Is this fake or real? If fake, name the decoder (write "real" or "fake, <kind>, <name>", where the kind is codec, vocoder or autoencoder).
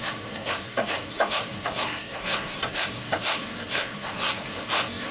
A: fake, codec, SNAC